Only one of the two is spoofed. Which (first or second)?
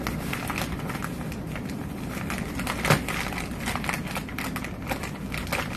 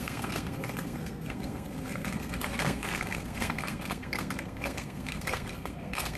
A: second